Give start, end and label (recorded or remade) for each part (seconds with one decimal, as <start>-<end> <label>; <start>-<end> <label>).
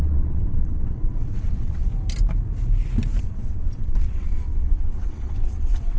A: 0.0-1.9 remade; 1.9-3.2 recorded; 3.2-6.0 remade